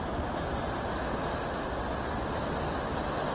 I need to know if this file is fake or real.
real